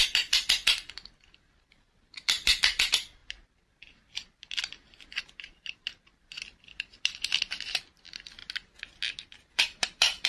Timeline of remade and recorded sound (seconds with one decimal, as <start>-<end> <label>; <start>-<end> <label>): 0.0-8.4 remade; 8.4-9.5 recorded; 9.5-10.3 remade

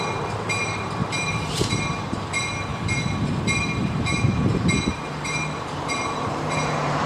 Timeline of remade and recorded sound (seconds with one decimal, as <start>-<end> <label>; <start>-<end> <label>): 0.0-2.7 remade; 2.7-3.2 recorded; 3.2-7.1 remade